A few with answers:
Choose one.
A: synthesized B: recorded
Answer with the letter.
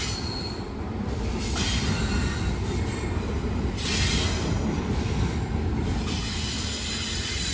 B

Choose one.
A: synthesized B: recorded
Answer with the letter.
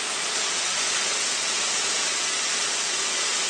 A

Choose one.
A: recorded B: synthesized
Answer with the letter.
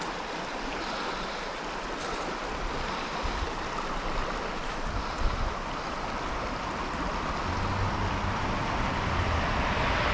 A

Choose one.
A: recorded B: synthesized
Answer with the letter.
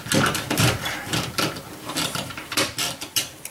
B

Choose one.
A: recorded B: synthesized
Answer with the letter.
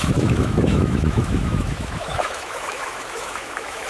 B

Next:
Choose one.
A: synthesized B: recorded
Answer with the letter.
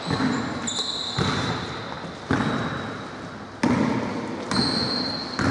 B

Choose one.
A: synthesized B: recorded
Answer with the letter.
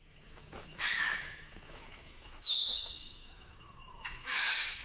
A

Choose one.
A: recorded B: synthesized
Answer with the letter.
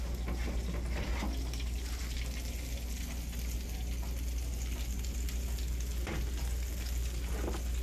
A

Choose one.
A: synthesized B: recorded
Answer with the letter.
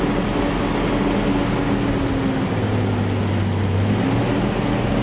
B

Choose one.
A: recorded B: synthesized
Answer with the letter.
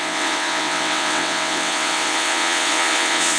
B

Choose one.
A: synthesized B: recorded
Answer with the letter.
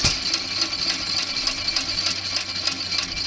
B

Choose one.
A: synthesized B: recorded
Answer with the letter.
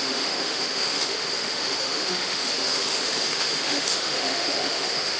A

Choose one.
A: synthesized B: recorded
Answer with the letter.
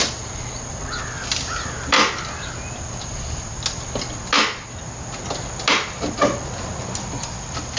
B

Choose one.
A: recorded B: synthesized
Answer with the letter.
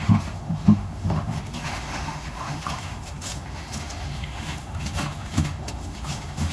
B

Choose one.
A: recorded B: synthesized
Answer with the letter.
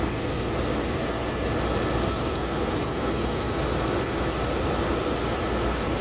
A